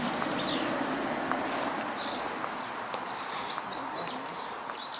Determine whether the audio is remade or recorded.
recorded